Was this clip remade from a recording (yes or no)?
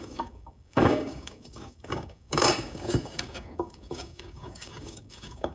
yes